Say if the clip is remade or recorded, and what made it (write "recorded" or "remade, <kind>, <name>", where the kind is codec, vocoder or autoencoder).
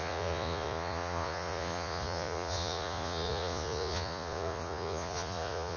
remade, vocoder, Vocos